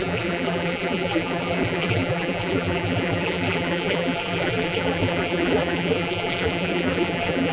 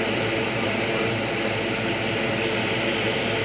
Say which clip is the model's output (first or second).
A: first